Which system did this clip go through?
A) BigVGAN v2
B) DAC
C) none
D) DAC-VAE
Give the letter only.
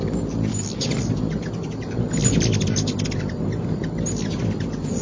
C